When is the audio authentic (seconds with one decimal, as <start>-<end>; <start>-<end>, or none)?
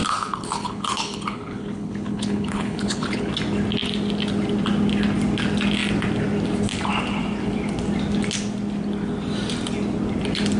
3.3-10.6